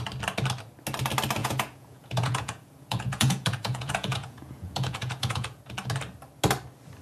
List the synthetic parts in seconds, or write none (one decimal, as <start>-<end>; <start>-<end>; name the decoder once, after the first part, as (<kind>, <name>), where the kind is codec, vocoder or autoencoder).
1.4-5.6 (vocoder, Vocos)